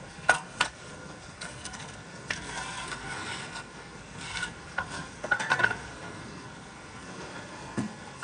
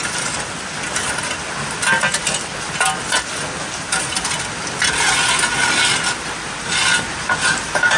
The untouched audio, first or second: second